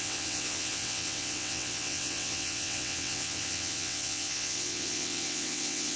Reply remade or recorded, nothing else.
remade